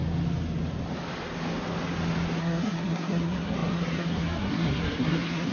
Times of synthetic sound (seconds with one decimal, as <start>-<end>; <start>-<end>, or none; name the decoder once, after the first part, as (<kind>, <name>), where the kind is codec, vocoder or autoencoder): 2.4-5.5 (codec, SNAC)